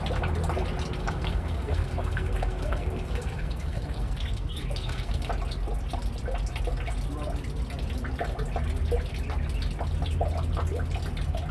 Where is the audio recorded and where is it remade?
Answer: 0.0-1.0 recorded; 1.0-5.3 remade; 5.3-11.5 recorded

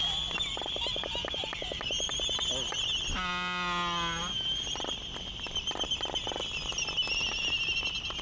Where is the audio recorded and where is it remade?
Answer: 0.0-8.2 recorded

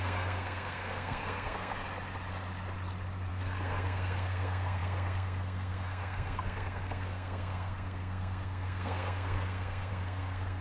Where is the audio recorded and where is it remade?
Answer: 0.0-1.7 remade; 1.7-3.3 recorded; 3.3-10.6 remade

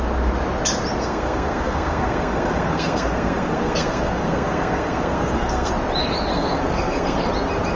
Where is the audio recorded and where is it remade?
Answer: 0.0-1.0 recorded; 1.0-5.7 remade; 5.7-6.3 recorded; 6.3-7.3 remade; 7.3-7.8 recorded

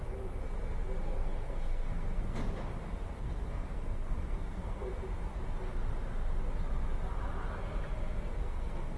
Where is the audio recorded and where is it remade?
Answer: 0.0-1.0 recorded; 1.0-2.4 remade; 2.4-3.2 recorded; 3.2-4.9 remade; 4.9-8.4 recorded; 8.4-9.0 remade